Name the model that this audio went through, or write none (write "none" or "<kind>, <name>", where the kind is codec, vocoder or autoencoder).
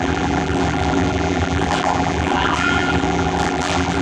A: vocoder, BigVGAN v2